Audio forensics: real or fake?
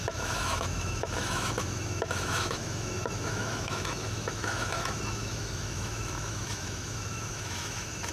fake